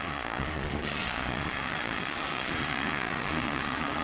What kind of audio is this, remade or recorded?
remade